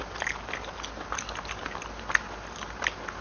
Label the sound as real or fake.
real